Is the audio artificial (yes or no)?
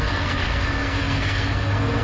yes